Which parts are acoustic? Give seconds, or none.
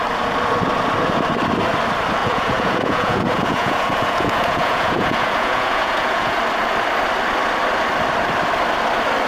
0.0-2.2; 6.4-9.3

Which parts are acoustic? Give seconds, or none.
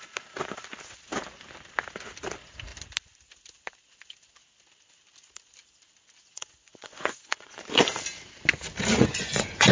0.0-6.3; 7.6-8.9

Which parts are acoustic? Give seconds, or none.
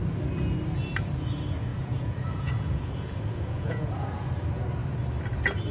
0.0-1.7; 4.3-5.7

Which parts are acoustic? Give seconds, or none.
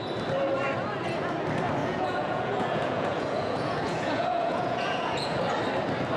0.0-1.8; 5.4-6.2